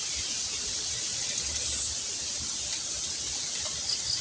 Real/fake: real